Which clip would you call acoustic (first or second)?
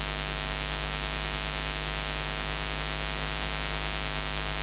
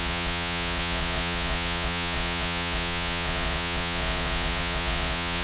first